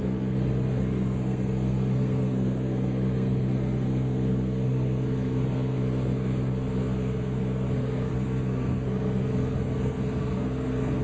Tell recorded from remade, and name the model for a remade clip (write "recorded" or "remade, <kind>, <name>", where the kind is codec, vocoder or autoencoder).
remade, codec, SNAC